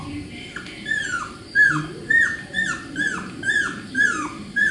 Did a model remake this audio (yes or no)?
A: yes